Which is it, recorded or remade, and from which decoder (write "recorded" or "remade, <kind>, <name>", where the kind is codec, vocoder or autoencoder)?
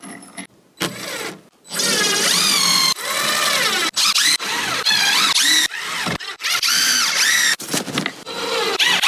recorded